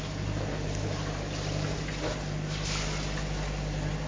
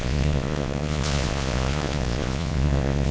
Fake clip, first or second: second